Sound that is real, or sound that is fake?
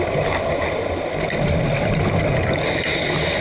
real